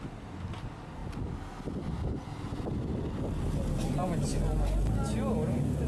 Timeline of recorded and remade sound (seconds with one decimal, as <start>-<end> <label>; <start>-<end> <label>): 0.0-5.9 recorded